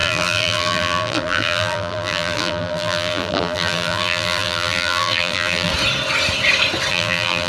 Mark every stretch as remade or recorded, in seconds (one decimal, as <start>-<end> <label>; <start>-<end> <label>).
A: 0.0-5.7 remade; 5.7-6.9 recorded; 6.9-7.5 remade